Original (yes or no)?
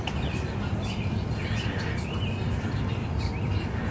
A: yes